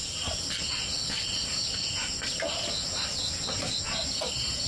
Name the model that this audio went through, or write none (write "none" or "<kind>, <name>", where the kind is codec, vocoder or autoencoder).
none